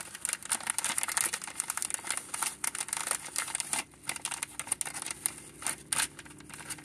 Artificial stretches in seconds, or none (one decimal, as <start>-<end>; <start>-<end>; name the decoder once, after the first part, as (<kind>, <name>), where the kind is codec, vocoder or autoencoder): none